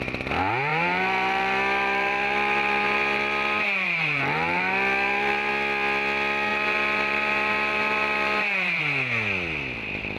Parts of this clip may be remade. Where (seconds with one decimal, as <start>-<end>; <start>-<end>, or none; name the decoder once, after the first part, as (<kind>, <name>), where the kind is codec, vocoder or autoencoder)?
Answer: 0.7-5.5 (vocoder, BigVGAN v2); 6.5-8.8